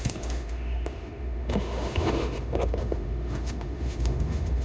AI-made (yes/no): yes